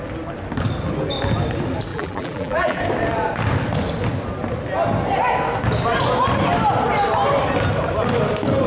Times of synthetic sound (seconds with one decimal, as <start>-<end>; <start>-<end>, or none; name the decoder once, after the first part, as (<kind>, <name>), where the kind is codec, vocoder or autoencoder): 1.9-2.8 (vocoder, BigVGAN v2)